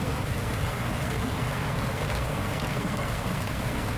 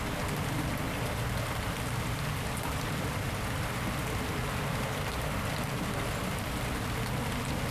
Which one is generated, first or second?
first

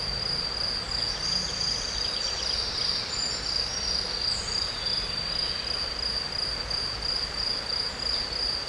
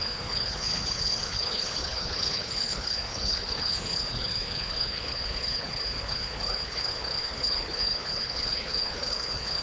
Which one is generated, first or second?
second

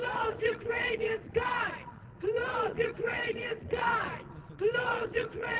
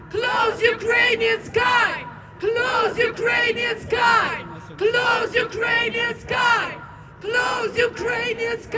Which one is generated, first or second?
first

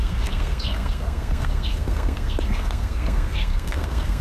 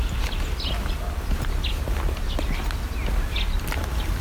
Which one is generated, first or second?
first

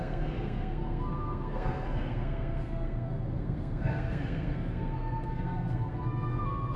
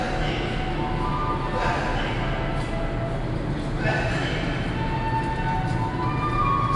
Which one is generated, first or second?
first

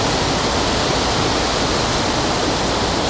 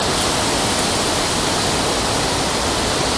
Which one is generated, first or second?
second